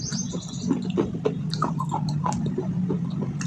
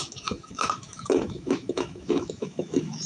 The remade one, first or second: second